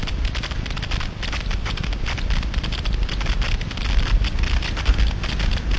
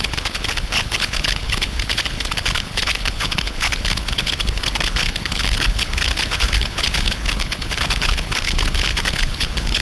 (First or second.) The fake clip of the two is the second